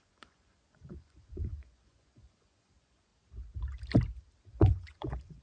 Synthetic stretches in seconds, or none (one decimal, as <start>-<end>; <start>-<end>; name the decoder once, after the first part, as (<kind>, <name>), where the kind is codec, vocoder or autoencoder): 0.0-3.1 (vocoder, Vocos); 4.5-5.4